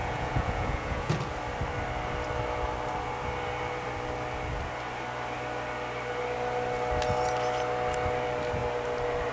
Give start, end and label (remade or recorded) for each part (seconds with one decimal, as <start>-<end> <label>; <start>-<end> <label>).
0.0-1.1 remade; 1.1-9.3 recorded